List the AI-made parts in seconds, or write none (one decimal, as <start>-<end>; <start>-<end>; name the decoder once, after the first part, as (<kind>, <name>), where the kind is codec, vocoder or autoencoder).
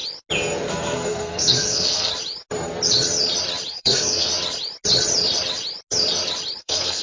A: 0.7-2.1 (codec, SNAC); 3.7-4.3; 6.6-7.0